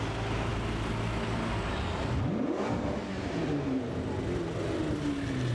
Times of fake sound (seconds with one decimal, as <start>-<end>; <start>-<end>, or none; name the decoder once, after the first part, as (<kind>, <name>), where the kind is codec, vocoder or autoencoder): none